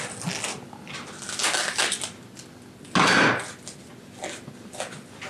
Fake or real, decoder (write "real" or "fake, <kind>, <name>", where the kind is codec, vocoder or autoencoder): real